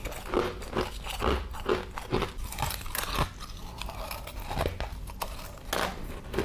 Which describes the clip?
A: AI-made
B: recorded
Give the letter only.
B